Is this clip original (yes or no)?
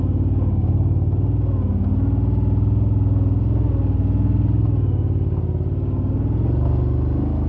yes